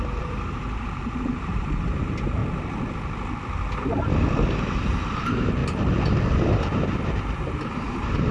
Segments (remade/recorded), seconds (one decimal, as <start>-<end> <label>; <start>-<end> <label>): 0.0-2.4 remade; 2.4-4.4 recorded; 4.4-5.6 remade; 5.6-6.6 recorded; 6.6-8.3 remade